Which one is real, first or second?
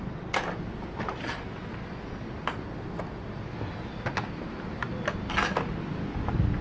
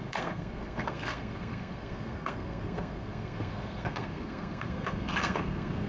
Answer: first